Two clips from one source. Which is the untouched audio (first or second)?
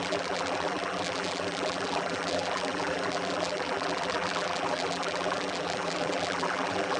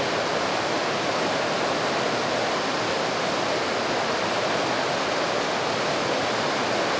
second